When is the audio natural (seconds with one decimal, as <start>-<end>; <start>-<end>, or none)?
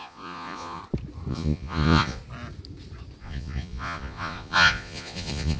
0.8-1.3; 2.2-3.2